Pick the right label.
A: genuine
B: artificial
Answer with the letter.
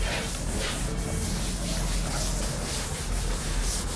A